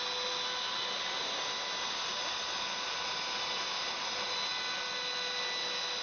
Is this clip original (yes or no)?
yes